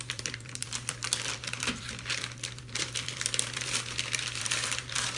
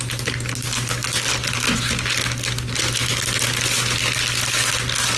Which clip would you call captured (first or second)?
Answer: second